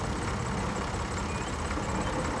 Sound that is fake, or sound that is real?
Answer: real